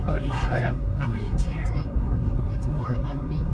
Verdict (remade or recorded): remade